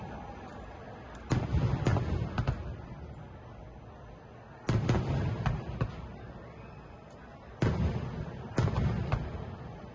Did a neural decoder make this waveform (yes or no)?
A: no